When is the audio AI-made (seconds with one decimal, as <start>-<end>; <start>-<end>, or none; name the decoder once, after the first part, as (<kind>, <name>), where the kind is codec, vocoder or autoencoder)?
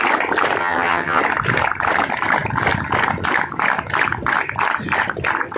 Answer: 0.6-1.2 (vocoder, HiFi-GAN)